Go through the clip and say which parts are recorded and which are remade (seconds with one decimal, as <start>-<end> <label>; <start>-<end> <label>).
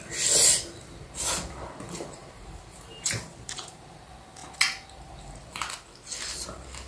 0.0-2.2 recorded; 2.2-3.8 remade; 3.8-6.9 recorded